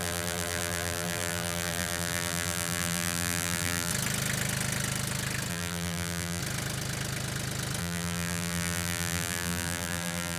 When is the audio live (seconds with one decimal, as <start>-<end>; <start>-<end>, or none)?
3.9-5.5; 6.4-7.8